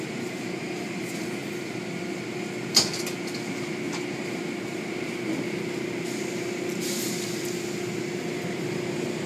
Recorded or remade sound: recorded